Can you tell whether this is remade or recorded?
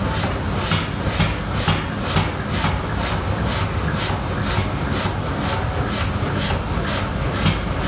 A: recorded